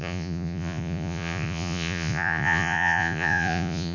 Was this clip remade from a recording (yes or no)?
yes